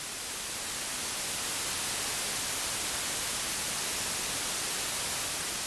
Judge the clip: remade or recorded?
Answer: recorded